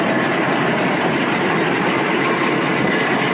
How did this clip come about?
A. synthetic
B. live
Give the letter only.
A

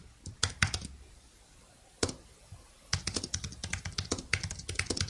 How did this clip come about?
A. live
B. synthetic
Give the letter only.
A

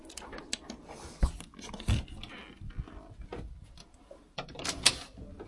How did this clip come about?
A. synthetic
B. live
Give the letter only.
B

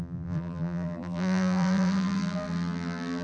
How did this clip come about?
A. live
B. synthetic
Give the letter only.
B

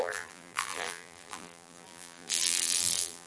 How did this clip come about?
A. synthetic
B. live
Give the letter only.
A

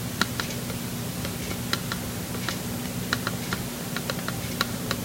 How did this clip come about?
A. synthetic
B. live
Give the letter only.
B